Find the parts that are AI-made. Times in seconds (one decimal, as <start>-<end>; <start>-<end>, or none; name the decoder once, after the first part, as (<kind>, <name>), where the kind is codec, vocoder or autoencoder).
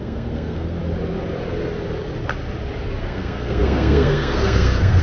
0.0-0.8 (codec, SNAC); 3.0-5.0